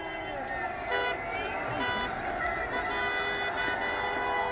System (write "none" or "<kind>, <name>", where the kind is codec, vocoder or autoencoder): none